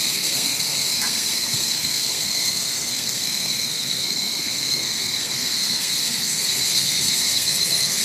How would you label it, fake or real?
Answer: fake